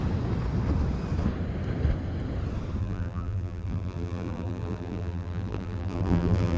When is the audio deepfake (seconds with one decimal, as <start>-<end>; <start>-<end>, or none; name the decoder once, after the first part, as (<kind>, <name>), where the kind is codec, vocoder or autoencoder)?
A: 2.8-6.6 (vocoder, BigVGAN v2)